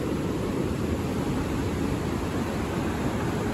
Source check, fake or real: fake